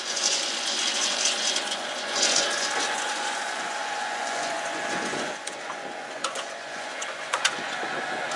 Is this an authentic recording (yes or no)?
no